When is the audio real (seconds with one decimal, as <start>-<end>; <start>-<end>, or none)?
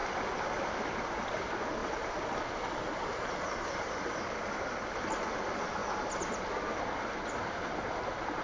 0.0-1.8; 4.0-8.4